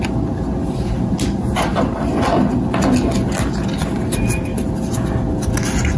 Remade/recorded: recorded